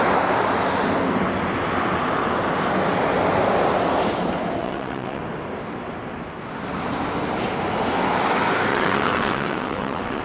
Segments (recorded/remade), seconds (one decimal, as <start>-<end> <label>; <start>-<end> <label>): 0.0-4.6 recorded; 4.6-5.2 remade; 5.2-8.7 recorded; 8.7-10.2 remade